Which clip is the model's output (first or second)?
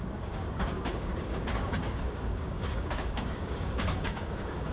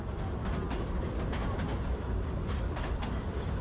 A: first